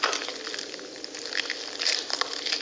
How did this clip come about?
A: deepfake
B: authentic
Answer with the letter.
B